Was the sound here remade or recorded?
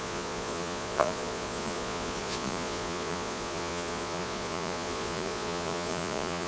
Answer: remade